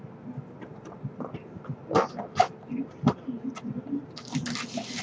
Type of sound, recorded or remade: recorded